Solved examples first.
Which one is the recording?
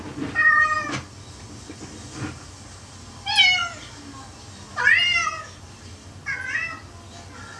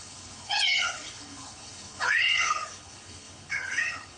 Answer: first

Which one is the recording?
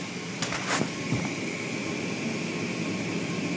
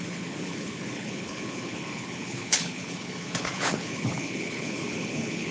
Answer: first